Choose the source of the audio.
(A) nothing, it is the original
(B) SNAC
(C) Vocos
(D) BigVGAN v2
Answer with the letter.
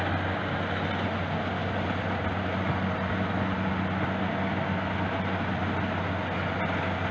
A